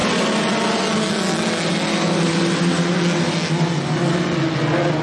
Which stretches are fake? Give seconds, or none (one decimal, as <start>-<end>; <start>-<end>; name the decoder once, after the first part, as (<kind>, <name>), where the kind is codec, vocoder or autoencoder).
none